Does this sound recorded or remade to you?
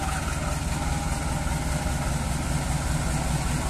recorded